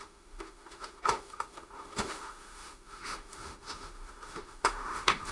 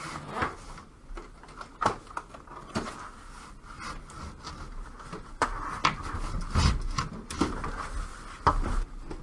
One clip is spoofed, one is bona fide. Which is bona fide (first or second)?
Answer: second